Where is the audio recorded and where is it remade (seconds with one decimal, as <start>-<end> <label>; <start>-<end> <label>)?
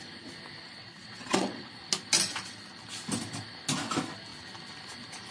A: 0.0-0.8 recorded; 0.8-1.7 remade; 1.7-5.3 recorded